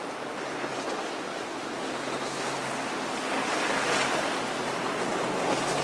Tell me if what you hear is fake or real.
real